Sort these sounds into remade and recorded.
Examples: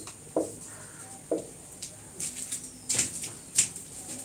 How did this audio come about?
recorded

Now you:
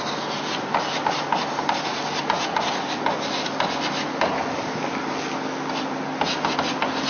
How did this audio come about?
recorded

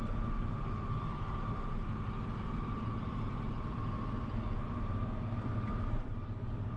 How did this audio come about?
remade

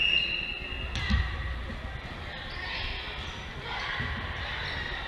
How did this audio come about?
recorded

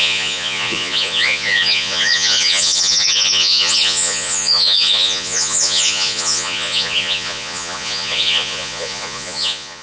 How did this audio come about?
remade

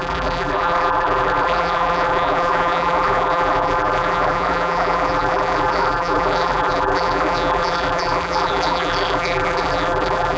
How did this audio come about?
remade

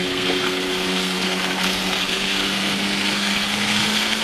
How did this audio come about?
remade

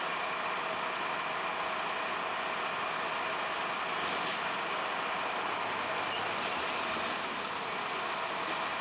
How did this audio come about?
recorded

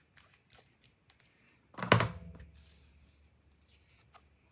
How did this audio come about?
recorded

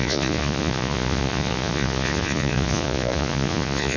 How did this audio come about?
remade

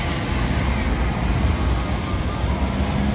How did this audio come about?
recorded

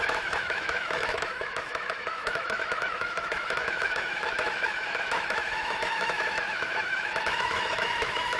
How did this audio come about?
remade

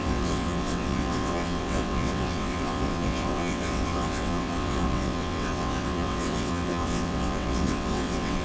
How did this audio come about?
remade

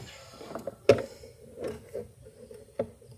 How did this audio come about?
recorded